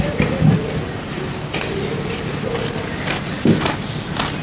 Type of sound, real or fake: fake